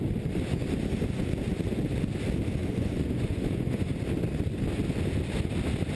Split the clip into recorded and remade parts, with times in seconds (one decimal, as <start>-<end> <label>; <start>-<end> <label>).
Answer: 0.0-2.6 recorded; 2.6-3.9 remade; 3.9-6.0 recorded